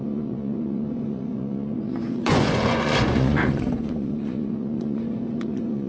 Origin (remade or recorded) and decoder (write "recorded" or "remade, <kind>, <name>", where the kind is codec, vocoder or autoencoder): remade, vocoder, Vocos